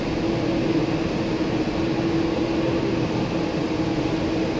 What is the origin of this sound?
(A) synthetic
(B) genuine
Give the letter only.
B